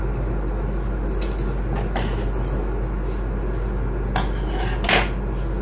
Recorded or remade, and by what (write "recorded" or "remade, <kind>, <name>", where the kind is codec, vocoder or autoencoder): recorded